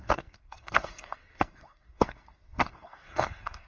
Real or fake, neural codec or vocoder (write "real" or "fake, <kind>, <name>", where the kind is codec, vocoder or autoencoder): fake, codec, SNAC